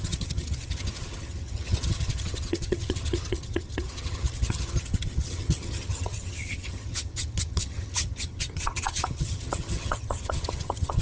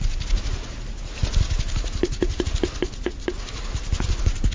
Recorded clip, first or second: second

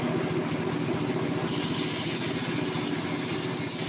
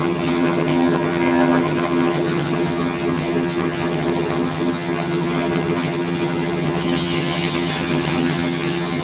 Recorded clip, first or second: first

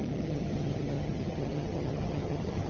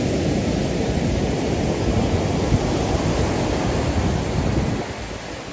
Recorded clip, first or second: second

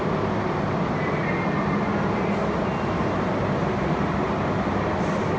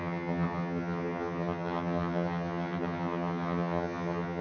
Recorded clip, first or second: first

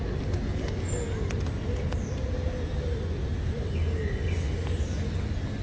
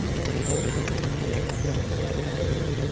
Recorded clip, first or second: first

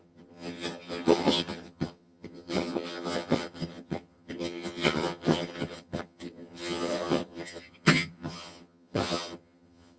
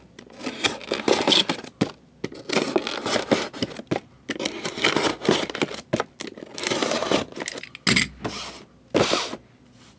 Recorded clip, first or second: second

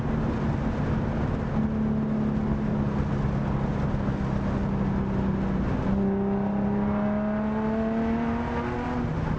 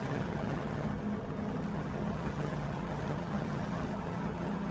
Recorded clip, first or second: first